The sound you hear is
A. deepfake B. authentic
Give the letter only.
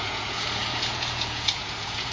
A